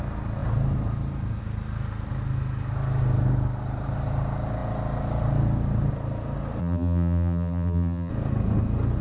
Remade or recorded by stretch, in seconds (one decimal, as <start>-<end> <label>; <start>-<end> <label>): 0.0-6.6 recorded; 6.6-8.1 remade; 8.1-9.0 recorded